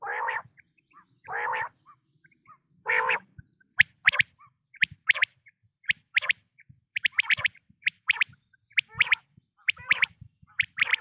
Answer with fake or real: fake